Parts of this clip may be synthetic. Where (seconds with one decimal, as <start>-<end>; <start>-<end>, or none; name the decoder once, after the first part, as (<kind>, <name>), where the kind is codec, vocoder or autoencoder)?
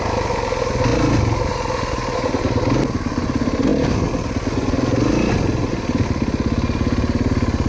none